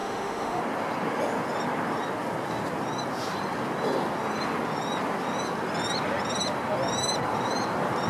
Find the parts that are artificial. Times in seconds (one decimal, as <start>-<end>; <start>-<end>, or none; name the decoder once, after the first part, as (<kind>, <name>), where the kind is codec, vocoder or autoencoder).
0.0-0.6 (autoencoder, DAC-VAE)